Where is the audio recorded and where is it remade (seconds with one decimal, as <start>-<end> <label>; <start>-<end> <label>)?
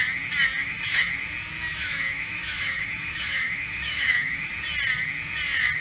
0.0-0.6 recorded; 0.6-1.1 remade; 1.1-1.7 recorded; 1.7-4.5 remade; 4.5-5.8 recorded